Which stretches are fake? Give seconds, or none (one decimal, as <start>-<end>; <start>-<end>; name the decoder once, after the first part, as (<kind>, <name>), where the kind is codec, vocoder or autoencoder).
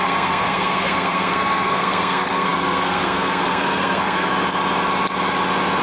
0.0-4.3 (codec, SNAC)